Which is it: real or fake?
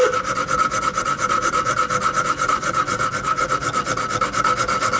real